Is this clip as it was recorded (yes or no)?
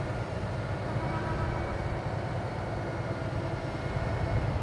yes